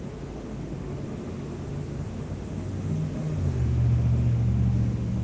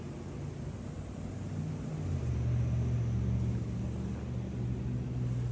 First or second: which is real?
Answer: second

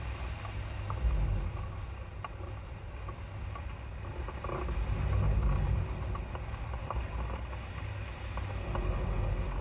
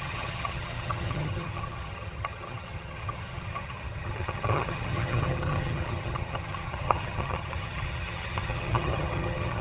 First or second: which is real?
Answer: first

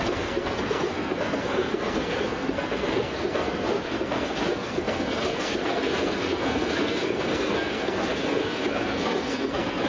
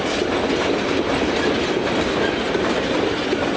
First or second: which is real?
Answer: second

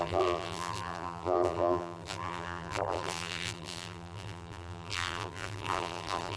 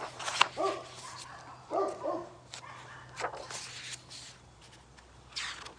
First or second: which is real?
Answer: second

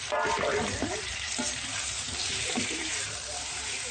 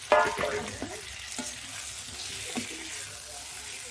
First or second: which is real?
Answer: second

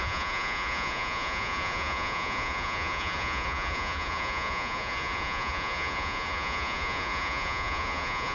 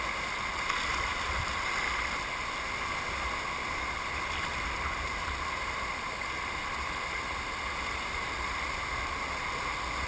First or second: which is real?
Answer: second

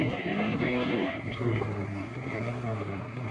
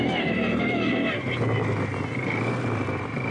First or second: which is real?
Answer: second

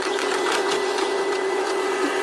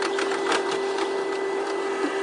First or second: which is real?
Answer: second